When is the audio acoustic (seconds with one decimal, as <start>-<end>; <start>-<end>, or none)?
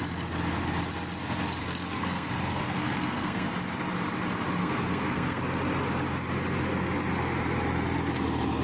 0.0-1.6; 3.5-4.6; 5.4-8.6